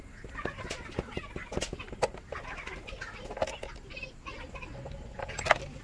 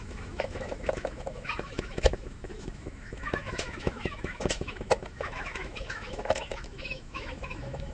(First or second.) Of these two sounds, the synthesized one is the second